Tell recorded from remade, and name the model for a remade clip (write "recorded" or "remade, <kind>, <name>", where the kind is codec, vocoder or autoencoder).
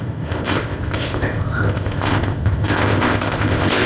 remade, codec, ZipCodec